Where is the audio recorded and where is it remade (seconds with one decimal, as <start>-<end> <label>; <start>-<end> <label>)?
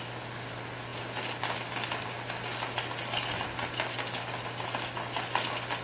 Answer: 0.0-5.8 recorded